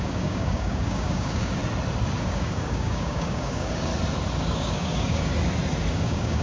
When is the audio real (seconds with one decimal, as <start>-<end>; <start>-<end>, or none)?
1.6-2.2; 3.9-4.4; 5.3-5.9